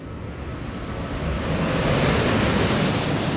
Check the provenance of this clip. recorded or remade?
recorded